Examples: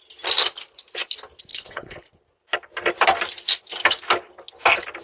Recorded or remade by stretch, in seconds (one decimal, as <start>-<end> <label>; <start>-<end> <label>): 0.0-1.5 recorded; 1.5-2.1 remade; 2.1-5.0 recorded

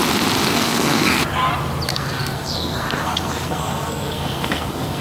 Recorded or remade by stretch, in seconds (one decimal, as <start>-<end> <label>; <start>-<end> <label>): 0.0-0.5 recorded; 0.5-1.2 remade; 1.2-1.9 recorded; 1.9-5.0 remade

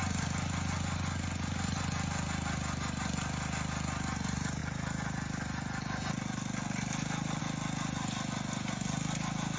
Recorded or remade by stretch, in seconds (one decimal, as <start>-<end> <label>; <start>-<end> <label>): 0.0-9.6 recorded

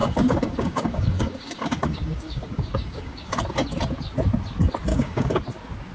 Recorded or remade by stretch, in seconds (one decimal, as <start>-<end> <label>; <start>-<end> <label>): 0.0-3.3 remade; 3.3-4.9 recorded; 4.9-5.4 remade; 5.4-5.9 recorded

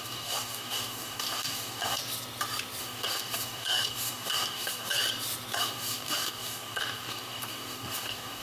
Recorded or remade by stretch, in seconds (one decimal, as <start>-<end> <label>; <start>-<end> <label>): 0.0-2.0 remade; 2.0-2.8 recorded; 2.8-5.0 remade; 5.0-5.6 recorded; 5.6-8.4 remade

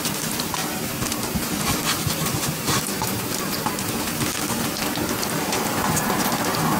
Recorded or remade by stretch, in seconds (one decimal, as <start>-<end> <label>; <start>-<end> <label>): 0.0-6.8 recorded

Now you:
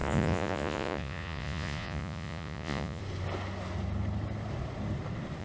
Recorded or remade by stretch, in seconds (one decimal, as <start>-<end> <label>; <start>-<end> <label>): 0.0-3.0 remade; 3.0-5.4 recorded

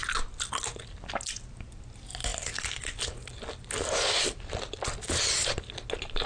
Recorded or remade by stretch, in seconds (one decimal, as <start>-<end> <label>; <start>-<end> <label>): 0.0-6.3 recorded